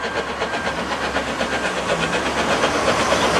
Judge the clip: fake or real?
real